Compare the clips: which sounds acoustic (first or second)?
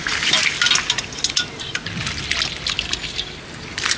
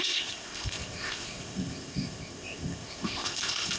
first